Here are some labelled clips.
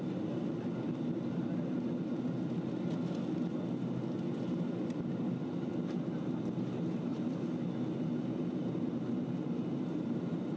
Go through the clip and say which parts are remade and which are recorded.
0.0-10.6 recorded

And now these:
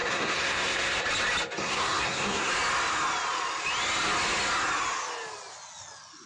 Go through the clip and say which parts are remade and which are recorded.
0.0-1.0 remade; 1.0-1.6 recorded; 1.6-2.5 remade; 2.5-6.3 recorded

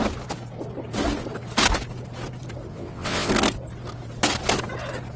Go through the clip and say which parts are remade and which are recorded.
0.0-2.7 recorded; 2.7-3.3 remade; 3.3-5.2 recorded

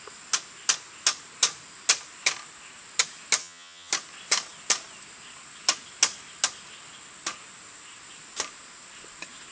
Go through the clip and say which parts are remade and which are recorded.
0.0-3.4 recorded; 3.4-3.9 remade; 3.9-9.5 recorded

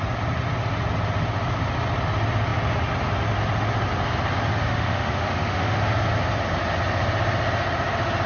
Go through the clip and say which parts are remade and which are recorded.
0.0-4.6 recorded; 4.6-5.8 remade; 5.8-8.3 recorded

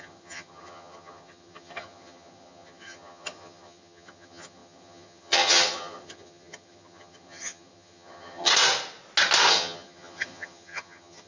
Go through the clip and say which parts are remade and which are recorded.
0.0-8.5 remade; 8.5-9.5 recorded; 9.5-11.3 remade

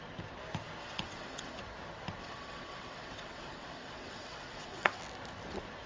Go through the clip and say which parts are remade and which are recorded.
0.0-0.8 recorded; 0.8-1.6 remade; 1.6-2.2 recorded; 2.2-5.0 remade; 5.0-5.9 recorded

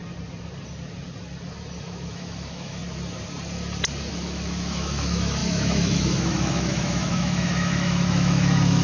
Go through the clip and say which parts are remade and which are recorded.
0.0-1.8 recorded; 1.8-2.8 remade; 2.8-4.1 recorded; 4.1-8.8 remade